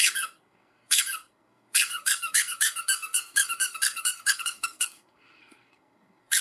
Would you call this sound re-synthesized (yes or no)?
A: yes